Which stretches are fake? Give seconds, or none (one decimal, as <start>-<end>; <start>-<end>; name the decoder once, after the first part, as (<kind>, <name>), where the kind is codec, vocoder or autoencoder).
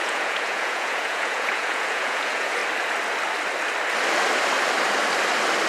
0.0-2.6 (vocoder, Vocos)